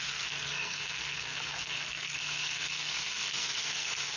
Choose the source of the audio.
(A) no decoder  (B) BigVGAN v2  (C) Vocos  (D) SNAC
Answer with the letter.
D